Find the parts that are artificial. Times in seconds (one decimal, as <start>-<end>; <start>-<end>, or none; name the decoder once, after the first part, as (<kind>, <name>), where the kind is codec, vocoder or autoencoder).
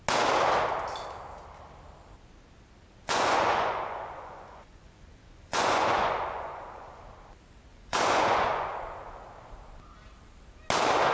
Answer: 3.0-7.0 (vocoder, Vocos); 7.7-8.7